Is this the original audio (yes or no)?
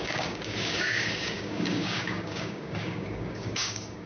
no